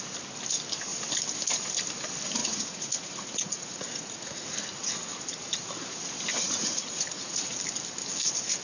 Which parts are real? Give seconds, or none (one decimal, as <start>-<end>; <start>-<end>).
0.0-2.4; 4.5-6.3; 7.6-8.6